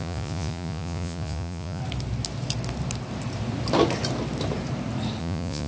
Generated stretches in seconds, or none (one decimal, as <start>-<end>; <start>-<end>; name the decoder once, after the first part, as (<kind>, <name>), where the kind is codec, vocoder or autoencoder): 0.0-1.8 (vocoder, Vocos); 5.2-5.7

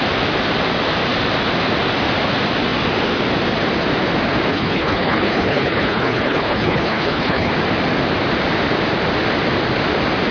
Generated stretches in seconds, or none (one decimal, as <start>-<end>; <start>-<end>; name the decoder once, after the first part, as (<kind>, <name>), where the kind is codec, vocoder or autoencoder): 4.5-7.5 (codec, HILCodec)